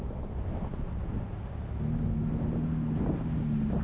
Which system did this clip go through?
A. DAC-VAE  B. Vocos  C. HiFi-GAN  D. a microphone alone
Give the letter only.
D